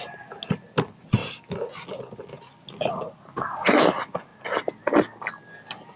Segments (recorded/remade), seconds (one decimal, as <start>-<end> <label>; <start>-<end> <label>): 0.0-6.0 recorded